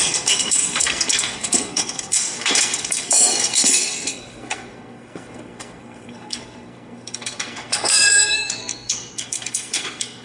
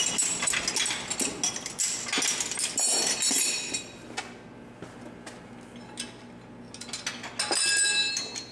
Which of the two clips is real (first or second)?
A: second